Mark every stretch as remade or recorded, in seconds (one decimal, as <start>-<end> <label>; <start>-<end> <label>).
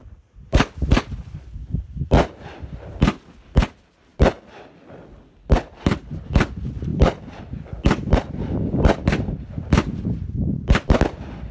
0.0-11.5 recorded